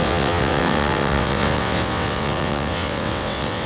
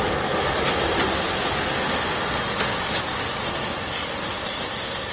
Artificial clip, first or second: first